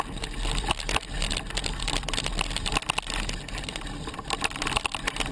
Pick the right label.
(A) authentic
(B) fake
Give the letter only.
B